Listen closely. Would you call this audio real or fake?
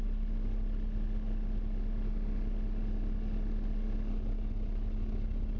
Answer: real